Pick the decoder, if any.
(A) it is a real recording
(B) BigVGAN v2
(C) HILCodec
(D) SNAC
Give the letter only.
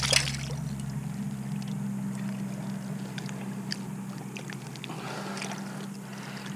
A